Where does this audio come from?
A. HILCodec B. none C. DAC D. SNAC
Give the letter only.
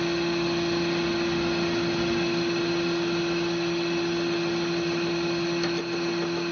B